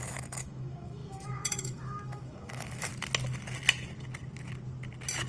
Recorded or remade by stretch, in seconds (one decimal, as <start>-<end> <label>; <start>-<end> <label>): 0.0-2.9 remade; 2.9-5.3 recorded